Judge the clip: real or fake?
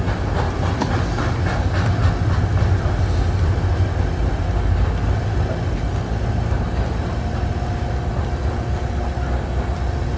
real